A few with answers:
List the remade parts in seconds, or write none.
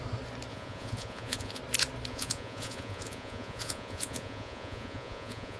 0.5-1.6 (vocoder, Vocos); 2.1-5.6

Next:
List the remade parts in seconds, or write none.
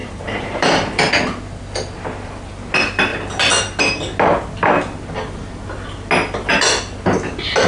0.0-1.1 (vocoder, BigVGAN v2)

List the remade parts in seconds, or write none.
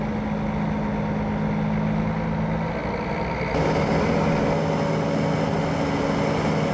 none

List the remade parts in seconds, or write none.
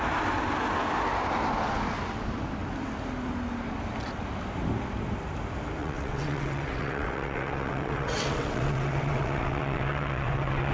5.8-10.7 (vocoder, WaveNeXt)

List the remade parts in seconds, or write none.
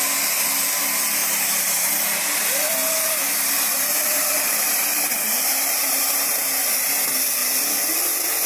1.2-2.7 (vocoder, BigVGAN v2); 3.9-6.4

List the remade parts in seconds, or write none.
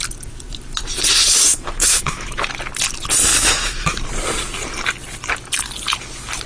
1.5-2.5 (autoencoder, DAC-VAE); 3.3-4.0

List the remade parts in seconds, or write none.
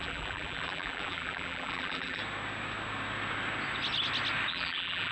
0.0-2.2 (vocoder, BigVGAN v2); 4.5-5.1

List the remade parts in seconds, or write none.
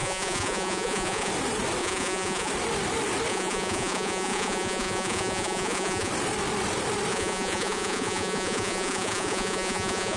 0.0-1.3 (vocoder, Vocos); 1.8-2.5; 3.3-6.1; 7.1-10.2